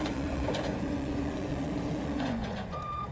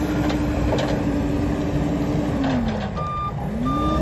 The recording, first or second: second